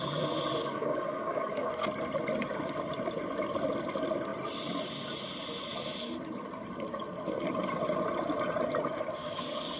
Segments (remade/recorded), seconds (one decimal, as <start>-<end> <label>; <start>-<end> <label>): 0.0-0.6 recorded; 0.6-1.7 remade; 1.7-9.2 recorded; 9.2-9.8 remade